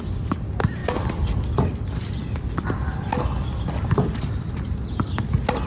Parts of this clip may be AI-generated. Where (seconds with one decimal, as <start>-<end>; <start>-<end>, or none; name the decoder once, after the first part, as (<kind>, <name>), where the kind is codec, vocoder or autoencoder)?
none